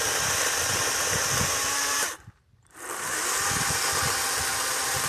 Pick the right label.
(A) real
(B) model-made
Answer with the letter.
B